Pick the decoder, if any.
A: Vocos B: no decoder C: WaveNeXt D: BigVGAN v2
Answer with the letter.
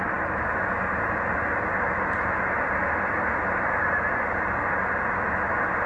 B